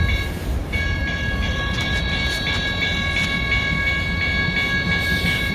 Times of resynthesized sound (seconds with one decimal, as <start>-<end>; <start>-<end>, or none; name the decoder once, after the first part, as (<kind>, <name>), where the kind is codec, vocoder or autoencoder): none